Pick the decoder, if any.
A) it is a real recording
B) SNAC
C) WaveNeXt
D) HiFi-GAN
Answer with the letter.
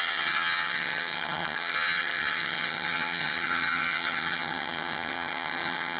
D